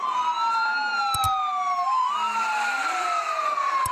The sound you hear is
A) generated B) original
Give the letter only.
B